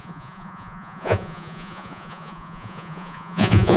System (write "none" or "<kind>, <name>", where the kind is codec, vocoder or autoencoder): vocoder, Vocos